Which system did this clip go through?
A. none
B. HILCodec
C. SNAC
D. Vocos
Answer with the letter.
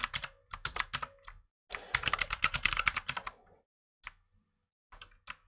A